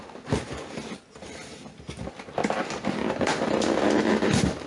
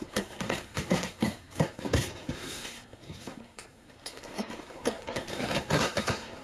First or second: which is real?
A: first